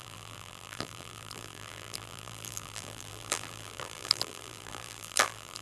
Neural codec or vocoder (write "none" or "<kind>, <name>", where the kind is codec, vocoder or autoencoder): vocoder, BigVGAN v2